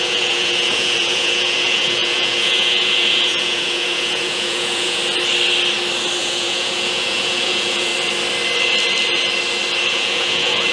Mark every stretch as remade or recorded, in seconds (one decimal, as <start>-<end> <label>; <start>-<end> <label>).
0.0-5.0 remade; 5.0-6.2 recorded; 6.2-7.9 remade; 7.9-9.9 recorded; 9.9-10.7 remade